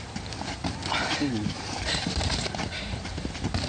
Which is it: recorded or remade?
recorded